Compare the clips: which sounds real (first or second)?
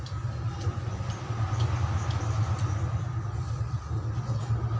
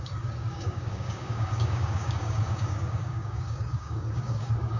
first